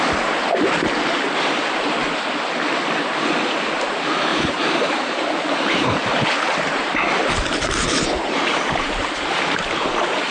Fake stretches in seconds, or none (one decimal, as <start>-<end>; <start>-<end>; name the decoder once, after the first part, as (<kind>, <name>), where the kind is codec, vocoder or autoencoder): 4.3-9.4 (vocoder, BigVGAN v2)